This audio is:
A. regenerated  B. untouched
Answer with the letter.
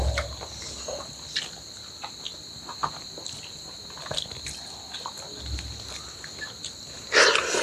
B